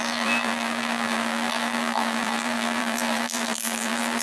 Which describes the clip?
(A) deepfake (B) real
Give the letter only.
A